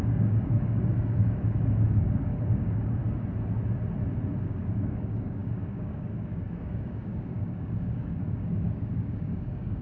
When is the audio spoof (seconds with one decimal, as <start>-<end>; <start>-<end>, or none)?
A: 0.0-3.0; 4.4-9.8